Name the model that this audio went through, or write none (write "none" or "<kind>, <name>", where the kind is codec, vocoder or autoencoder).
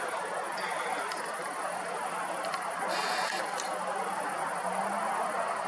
none